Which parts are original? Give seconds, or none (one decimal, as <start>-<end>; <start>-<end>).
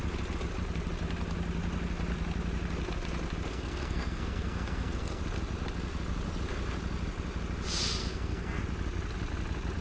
0.0-3.5; 5.2-8.0; 8.6-9.8